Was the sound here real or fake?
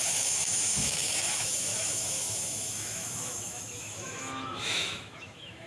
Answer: fake